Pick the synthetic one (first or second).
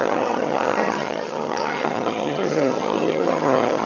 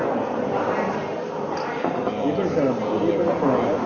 first